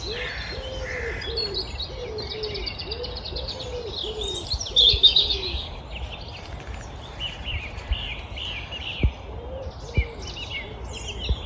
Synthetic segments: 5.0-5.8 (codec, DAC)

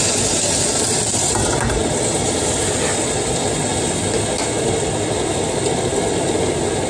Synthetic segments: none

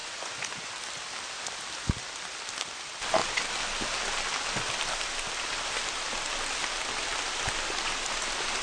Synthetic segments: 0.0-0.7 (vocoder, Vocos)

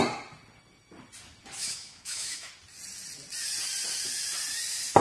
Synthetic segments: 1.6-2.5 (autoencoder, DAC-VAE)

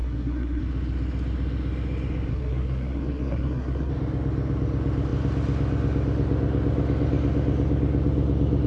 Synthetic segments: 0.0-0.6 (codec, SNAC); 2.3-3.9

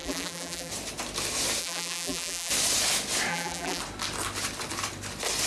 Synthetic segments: 0.0-0.7 (vocoder, BigVGAN v2); 1.6-2.5; 3.3-3.8

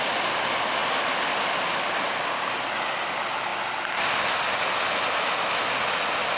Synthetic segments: none

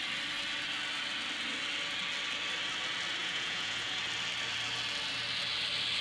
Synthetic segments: 3.2-4.0 (vocoder, Vocos)